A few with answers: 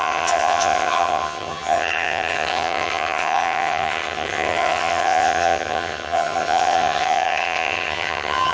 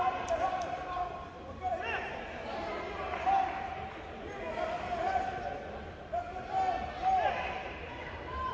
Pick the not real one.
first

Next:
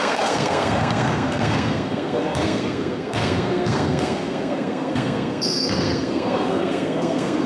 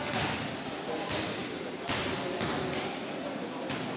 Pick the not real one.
first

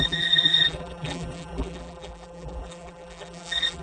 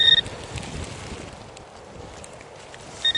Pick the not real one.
first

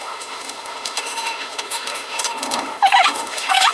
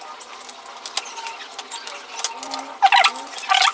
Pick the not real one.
first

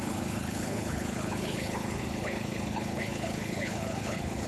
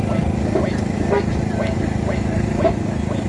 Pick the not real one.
first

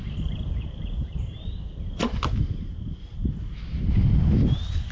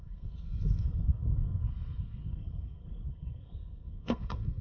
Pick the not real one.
second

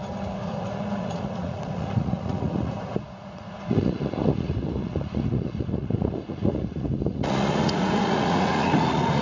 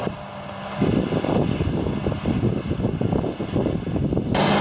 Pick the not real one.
first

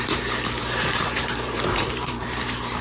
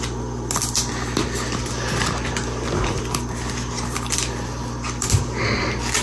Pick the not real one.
first